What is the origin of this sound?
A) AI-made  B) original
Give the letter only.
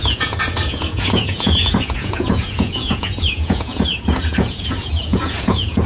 A